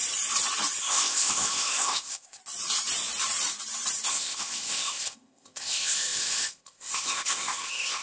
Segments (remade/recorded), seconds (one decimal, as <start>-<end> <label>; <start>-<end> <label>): 0.0-0.8 recorded; 0.8-2.4 remade; 2.4-4.1 recorded; 4.1-8.0 remade